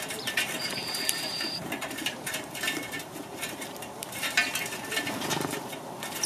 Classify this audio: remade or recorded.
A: remade